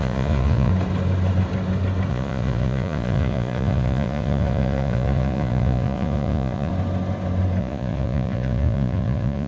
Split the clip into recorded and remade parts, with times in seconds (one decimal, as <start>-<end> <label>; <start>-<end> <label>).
0.0-0.7 remade; 0.7-2.1 recorded; 2.1-6.7 remade; 6.7-7.6 recorded; 7.6-9.5 remade